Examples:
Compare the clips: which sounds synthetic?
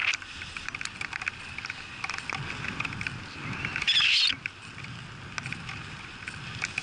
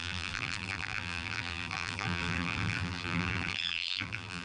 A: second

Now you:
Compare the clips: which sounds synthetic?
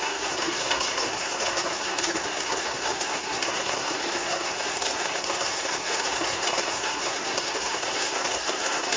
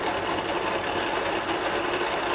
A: first